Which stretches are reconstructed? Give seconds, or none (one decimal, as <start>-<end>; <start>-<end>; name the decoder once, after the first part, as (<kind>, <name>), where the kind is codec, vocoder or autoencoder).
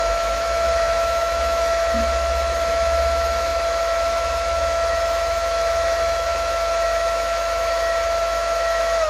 0.0-9.1 (autoencoder, DAC-VAE)